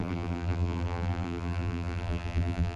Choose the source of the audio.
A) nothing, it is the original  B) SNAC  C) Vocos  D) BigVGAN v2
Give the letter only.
D